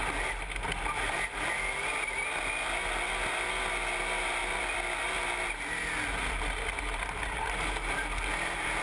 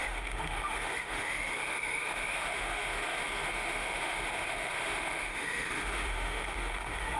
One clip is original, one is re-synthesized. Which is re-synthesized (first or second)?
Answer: second